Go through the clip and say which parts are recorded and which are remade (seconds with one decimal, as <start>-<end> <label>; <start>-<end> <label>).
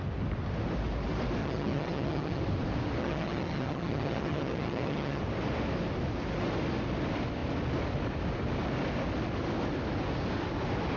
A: 0.0-1.4 recorded; 1.4-2.4 remade; 2.4-3.0 recorded; 3.0-5.2 remade; 5.2-11.0 recorded